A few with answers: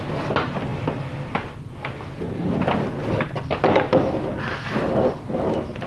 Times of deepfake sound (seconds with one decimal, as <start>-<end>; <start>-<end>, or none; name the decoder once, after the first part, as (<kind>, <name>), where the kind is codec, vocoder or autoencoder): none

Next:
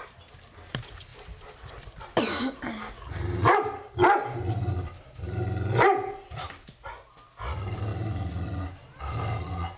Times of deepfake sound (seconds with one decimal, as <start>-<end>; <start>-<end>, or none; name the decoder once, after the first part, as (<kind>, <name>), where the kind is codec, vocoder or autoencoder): none

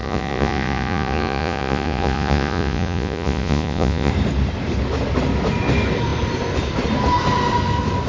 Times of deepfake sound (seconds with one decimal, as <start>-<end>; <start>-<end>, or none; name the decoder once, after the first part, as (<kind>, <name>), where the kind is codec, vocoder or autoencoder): 0.0-4.1 (vocoder, Vocos)

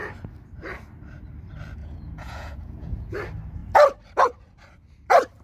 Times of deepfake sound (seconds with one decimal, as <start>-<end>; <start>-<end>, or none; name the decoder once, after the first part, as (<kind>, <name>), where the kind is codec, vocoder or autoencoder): 1.8-3.1 (vocoder, Vocos)

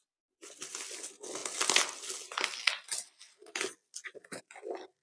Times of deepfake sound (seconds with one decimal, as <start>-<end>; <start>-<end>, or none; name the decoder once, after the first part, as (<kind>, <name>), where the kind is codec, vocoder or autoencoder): none

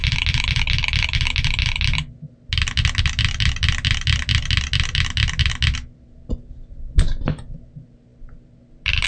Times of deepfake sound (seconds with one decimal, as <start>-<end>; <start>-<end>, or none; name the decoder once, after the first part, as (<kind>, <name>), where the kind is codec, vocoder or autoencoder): none

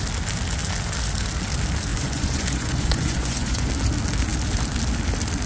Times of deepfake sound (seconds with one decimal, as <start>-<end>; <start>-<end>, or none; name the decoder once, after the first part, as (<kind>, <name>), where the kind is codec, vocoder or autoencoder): 1.9-3.7 (vocoder, Vocos)